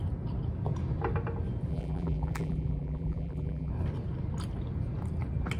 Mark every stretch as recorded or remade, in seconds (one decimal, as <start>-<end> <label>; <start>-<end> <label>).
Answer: 0.0-1.7 recorded; 1.7-3.7 remade; 3.7-5.6 recorded

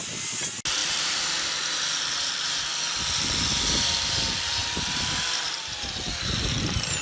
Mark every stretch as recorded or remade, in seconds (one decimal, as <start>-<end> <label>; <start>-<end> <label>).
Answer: 0.0-0.8 recorded; 0.8-1.5 remade; 1.5-4.6 recorded; 4.6-6.6 remade; 6.6-7.0 recorded

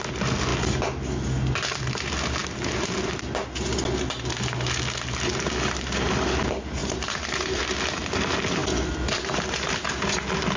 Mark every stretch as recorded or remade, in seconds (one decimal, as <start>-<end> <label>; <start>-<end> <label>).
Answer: 0.0-6.8 recorded; 6.8-7.6 remade; 7.6-10.6 recorded

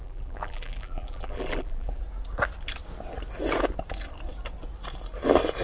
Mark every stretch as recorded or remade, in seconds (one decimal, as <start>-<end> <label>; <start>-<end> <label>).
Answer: 0.0-2.0 remade; 2.0-5.6 recorded

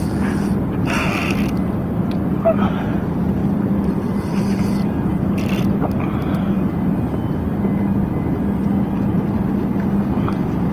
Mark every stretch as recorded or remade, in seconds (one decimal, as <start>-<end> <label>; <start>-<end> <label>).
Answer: 0.0-3.4 recorded; 3.4-7.0 remade; 7.0-10.7 recorded

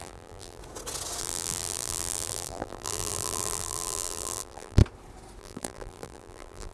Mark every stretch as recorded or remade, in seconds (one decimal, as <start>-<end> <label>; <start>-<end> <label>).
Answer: 0.0-0.6 remade; 0.6-1.2 recorded; 1.2-4.8 remade; 4.8-5.4 recorded; 5.4-6.7 remade

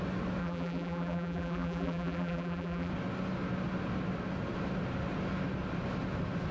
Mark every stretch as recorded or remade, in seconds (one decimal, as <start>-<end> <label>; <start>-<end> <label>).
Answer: 0.0-0.4 recorded; 0.4-2.9 remade; 2.9-6.5 recorded

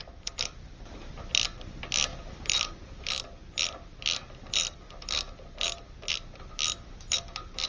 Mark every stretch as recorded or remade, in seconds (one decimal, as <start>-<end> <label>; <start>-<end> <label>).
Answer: 0.0-1.1 remade; 1.1-7.7 recorded